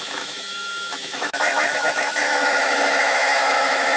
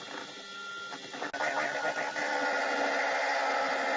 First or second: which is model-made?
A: first